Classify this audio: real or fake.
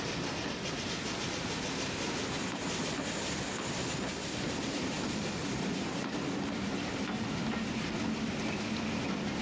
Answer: real